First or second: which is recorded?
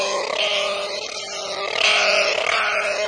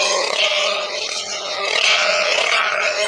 first